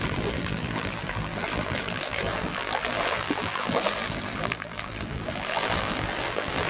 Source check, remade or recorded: remade